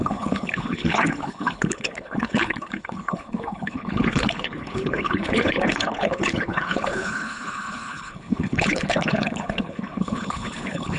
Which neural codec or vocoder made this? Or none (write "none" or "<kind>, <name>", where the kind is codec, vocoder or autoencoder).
codec, HILCodec